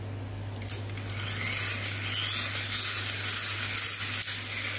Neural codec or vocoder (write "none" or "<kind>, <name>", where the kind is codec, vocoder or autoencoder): none